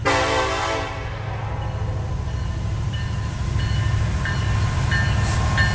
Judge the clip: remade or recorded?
recorded